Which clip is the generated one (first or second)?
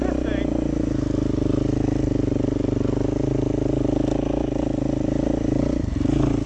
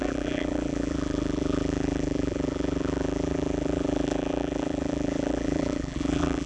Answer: second